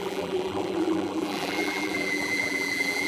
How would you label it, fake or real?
fake